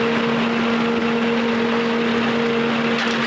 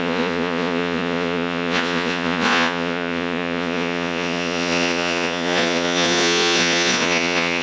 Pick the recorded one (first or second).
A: first